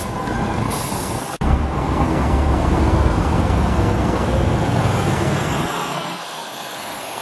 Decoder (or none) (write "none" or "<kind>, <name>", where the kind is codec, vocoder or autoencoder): codec, SNAC